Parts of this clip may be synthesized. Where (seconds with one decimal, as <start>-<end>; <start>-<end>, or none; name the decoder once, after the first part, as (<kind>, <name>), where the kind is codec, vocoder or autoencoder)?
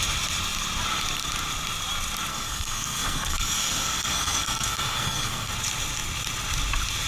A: 2.3-5.5 (codec, SNAC)